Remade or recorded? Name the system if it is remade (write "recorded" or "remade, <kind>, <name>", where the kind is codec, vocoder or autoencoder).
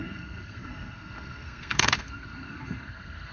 remade, codec, SNAC